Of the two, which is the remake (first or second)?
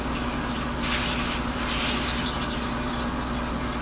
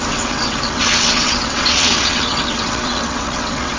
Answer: second